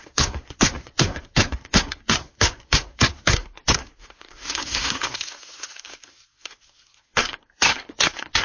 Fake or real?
fake